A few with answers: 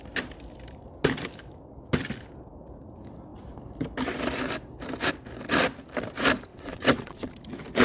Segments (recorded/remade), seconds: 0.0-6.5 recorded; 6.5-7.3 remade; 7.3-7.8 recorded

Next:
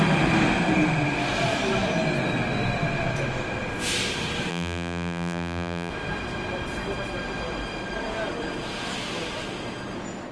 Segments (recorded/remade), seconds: 0.0-4.5 recorded; 4.5-5.9 remade; 5.9-10.3 recorded

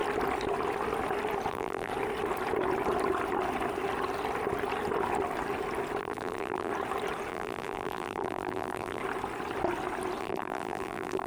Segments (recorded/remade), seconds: 0.0-1.5 recorded; 1.5-1.9 remade; 1.9-6.0 recorded; 6.0-6.7 remade; 6.7-7.3 recorded; 7.3-9.0 remade; 9.0-10.2 recorded; 10.2-11.3 remade

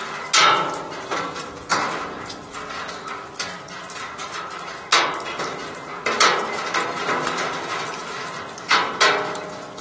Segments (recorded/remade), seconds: 0.0-9.8 recorded

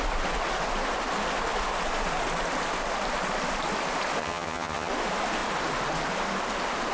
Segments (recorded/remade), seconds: 0.0-4.2 recorded; 4.2-4.9 remade; 4.9-6.9 recorded

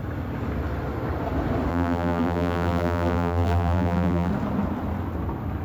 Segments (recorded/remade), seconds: 0.0-1.7 recorded; 1.7-4.3 remade; 4.3-5.6 recorded